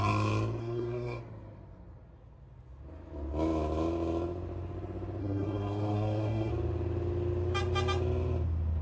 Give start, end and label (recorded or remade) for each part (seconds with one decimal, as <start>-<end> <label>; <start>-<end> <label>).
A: 0.0-0.6 recorded; 0.6-1.2 remade; 1.2-5.2 recorded; 5.2-6.5 remade; 6.5-8.8 recorded